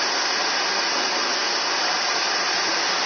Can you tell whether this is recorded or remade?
recorded